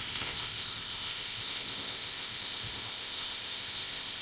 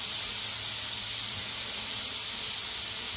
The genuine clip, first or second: second